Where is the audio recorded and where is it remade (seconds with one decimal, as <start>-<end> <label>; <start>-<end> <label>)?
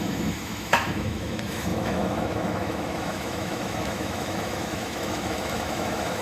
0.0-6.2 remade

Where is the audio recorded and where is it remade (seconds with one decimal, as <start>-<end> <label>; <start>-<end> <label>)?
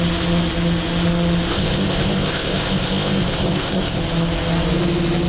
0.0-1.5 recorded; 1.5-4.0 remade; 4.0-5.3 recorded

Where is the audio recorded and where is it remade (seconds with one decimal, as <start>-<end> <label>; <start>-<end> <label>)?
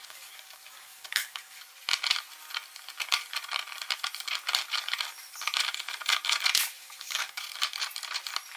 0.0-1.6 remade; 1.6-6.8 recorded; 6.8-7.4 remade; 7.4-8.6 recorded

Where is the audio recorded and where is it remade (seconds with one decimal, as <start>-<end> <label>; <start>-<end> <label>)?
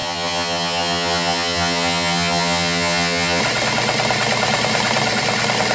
0.0-3.4 remade; 3.4-5.7 recorded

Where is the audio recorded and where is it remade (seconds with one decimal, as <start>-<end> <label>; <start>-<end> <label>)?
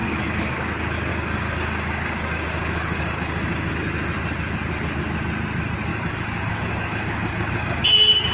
0.0-0.6 remade; 0.6-1.1 recorded; 1.1-3.7 remade; 3.7-5.9 recorded; 5.9-7.8 remade; 7.8-8.3 recorded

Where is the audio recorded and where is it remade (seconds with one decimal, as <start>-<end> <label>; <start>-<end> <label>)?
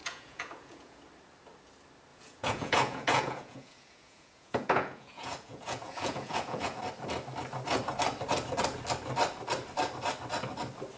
0.0-1.0 remade; 1.0-2.1 recorded; 2.1-6.8 remade; 6.8-11.0 recorded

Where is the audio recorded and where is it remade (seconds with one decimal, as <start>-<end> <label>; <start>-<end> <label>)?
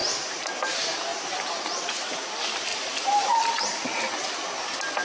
0.0-0.5 remade; 0.5-1.1 recorded; 1.1-2.3 remade; 2.3-2.7 recorded; 2.7-3.3 remade; 3.3-5.0 recorded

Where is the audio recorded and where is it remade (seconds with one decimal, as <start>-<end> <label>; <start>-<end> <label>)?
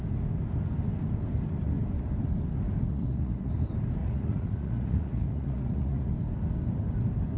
0.0-2.9 recorded; 2.9-3.5 remade; 3.5-4.0 recorded; 4.0-6.1 remade; 6.1-7.4 recorded